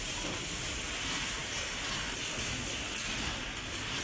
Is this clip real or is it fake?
real